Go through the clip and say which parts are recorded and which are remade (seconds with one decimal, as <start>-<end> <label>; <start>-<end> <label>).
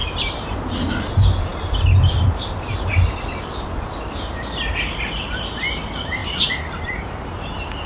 0.0-0.7 remade; 0.7-6.2 recorded; 6.2-7.9 remade